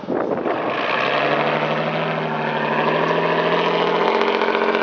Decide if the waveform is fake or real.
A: real